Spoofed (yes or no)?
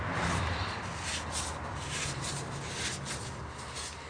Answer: no